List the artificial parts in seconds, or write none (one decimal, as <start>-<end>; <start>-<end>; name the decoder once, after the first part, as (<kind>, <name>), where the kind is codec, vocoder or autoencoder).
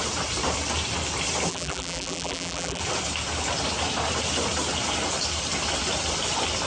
1.5-2.8 (vocoder, BigVGAN v2)